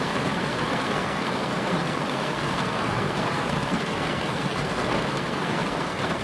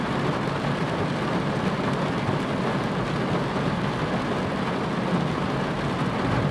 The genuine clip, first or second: second